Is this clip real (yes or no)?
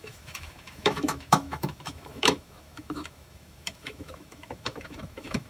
no